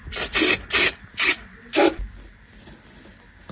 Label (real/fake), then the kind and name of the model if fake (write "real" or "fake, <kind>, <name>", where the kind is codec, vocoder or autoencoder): real